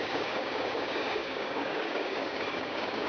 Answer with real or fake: fake